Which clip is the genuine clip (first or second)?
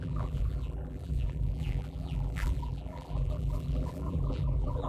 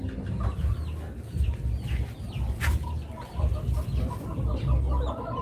second